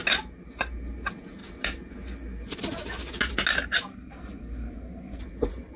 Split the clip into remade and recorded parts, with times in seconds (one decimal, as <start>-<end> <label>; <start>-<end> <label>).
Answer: 0.0-3.9 recorded; 3.9-5.2 remade; 5.2-5.8 recorded